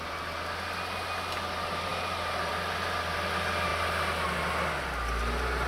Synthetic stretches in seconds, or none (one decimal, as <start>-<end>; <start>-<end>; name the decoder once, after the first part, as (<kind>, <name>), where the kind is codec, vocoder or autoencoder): none